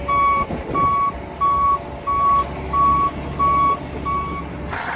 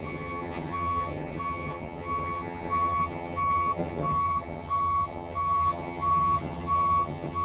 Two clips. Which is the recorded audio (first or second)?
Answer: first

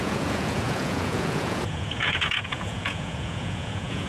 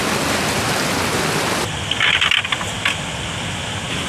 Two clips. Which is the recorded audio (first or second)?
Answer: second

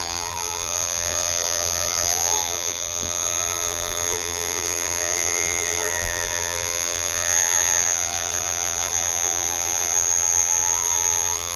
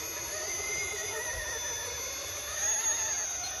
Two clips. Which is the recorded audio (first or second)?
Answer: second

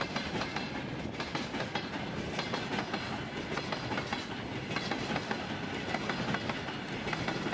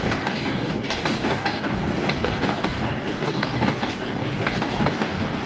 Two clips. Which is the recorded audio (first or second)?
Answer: first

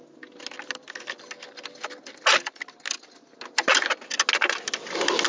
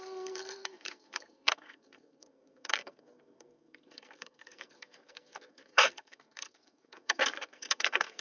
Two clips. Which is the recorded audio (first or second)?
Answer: first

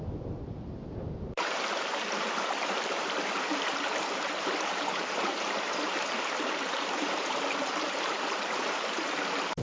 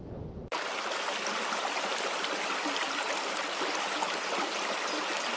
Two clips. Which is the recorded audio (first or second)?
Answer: second